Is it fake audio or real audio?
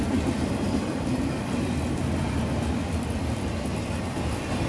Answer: real